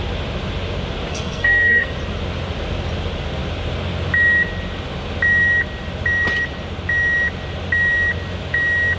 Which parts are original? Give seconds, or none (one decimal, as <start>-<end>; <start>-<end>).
0.0-1.1; 1.9-9.0